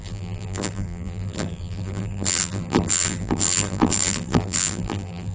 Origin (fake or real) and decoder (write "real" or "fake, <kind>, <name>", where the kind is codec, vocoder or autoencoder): fake, vocoder, BigVGAN v2